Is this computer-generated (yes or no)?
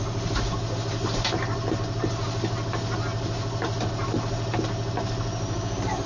no